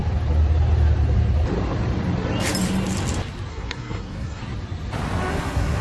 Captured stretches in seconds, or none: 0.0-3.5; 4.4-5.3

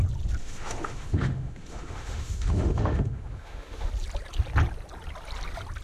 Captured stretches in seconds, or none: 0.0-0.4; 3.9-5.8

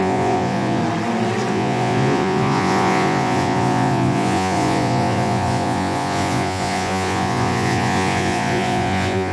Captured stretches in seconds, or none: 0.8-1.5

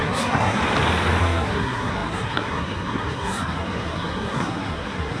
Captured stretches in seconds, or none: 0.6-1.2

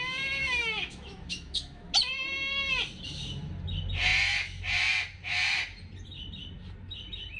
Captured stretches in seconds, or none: 0.0-0.4; 1.9-7.4